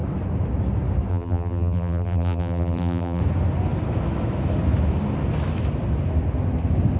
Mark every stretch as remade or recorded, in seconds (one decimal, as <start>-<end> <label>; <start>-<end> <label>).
0.0-1.1 recorded; 1.1-3.2 remade; 3.2-7.0 recorded